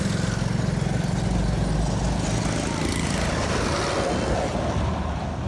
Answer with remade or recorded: recorded